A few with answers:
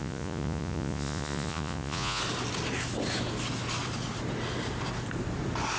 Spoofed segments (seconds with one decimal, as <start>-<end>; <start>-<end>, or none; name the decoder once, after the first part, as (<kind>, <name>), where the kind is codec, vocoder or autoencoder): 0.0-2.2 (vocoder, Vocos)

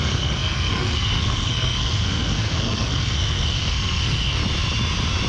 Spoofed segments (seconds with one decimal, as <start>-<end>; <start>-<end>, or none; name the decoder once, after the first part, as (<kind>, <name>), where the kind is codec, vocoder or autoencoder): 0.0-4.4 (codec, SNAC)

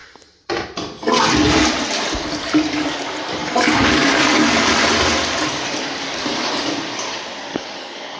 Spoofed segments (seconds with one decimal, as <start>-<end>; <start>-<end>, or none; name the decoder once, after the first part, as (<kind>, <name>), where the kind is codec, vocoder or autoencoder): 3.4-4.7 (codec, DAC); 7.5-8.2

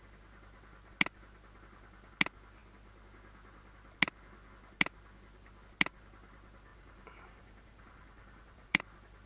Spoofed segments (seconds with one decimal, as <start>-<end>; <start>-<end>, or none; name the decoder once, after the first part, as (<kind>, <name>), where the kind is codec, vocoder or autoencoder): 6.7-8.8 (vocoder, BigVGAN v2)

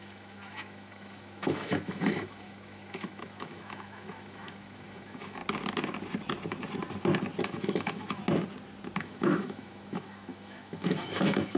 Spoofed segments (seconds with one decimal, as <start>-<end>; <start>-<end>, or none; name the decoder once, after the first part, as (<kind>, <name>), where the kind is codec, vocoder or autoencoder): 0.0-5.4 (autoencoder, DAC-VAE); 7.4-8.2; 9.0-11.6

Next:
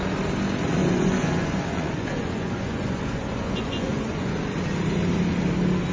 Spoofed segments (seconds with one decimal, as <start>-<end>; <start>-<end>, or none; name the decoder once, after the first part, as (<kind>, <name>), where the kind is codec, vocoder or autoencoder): 0.8-4.3 (vocoder, Vocos)

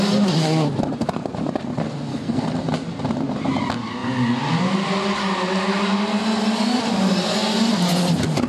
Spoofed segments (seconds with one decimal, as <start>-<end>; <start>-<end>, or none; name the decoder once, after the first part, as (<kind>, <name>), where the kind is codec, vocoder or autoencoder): 2.1-2.6 (codec, SNAC)

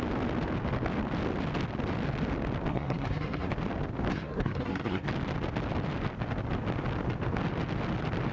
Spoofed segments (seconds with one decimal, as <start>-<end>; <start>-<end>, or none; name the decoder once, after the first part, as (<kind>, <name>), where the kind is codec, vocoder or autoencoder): 2.7-3.5 (codec, SNAC); 4.1-5.1